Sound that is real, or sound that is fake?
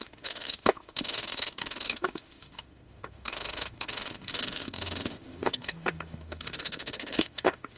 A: fake